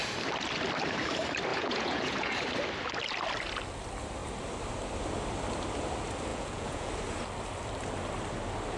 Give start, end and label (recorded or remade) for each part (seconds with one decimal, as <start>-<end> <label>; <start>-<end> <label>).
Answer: 0.0-1.5 recorded; 1.5-2.3 remade; 2.3-6.3 recorded; 6.3-6.9 remade; 6.9-8.8 recorded